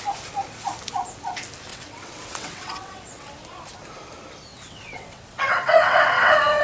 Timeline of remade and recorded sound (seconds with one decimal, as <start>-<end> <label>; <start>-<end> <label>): 0.0-1.7 recorded; 1.7-3.3 remade; 3.3-4.5 recorded; 4.5-6.6 remade